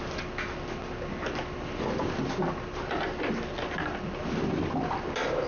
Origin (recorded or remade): recorded